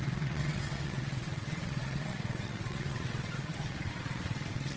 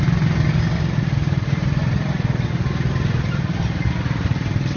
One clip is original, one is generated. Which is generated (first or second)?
first